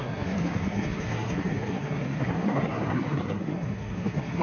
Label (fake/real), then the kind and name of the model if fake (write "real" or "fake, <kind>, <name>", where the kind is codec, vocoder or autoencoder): fake, codec, SNAC